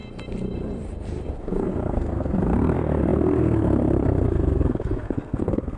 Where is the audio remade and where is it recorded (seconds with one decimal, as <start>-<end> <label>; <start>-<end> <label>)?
0.0-1.4 recorded; 1.4-5.8 remade